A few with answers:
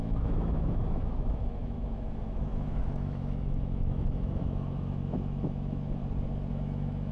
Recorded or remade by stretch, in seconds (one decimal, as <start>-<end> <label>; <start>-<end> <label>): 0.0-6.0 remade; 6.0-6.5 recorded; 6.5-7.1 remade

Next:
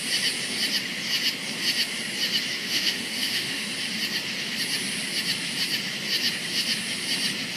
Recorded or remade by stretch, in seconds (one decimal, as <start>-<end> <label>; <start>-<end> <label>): 0.0-2.6 recorded; 2.6-3.7 remade; 3.7-7.6 recorded

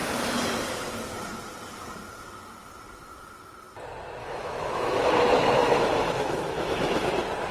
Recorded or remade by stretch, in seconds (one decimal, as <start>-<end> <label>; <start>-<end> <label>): 0.0-4.2 recorded; 4.2-5.1 remade; 5.1-5.6 recorded; 5.6-7.1 remade; 7.1-7.5 recorded

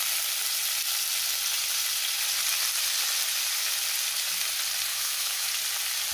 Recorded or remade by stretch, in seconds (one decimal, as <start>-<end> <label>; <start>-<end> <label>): 0.0-4.9 recorded; 4.9-5.5 remade; 5.5-6.1 recorded

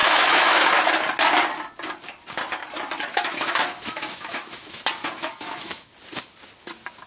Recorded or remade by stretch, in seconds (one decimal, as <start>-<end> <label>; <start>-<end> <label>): 0.0-0.9 remade; 0.9-3.1 recorded; 3.1-4.8 remade; 4.8-5.2 recorded; 5.2-5.9 remade; 5.9-7.1 recorded

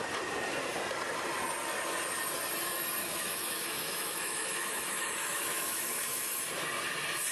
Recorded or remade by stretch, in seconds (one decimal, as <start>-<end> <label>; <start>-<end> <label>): 0.0-3.0 recorded; 3.0-6.4 remade; 6.4-7.3 recorded